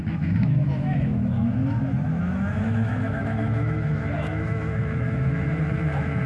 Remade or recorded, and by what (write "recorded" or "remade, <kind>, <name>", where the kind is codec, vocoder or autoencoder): remade, autoencoder, DAC-VAE